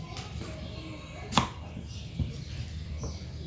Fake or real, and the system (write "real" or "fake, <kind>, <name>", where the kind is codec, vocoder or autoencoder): real